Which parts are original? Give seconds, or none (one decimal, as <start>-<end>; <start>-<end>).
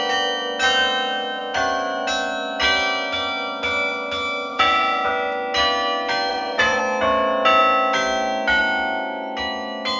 0.0-4.5; 5.1-6.3; 6.8-10.0